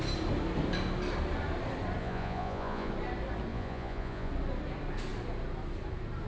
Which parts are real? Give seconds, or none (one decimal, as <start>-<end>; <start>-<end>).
0.0-2.0; 2.9-3.5; 4.3-6.3